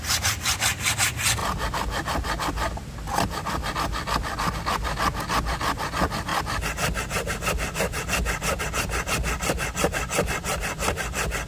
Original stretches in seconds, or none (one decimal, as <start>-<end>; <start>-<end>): 0.0-11.5